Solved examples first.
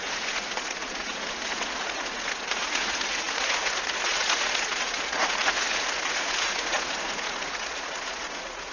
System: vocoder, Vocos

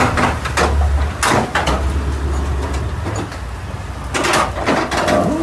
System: none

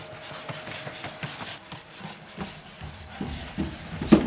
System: none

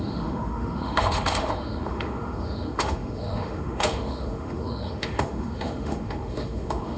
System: autoencoder, DAC-VAE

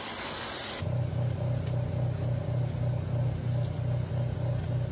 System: none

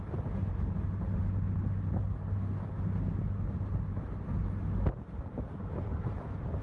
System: none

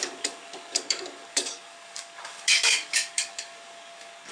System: codec, DAC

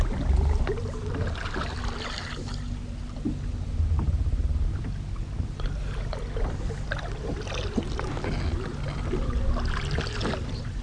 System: none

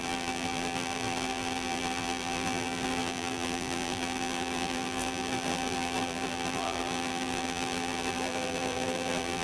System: vocoder, BigVGAN v2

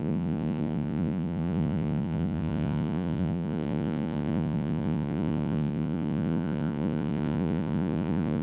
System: vocoder, Vocos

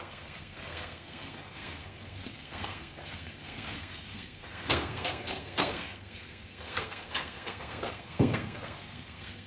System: codec, SNAC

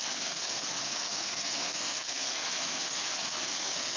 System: codec, SNAC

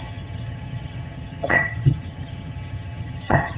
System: vocoder, HiFi-GAN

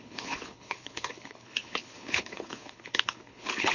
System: codec, HILCodec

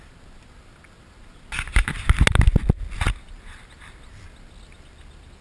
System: none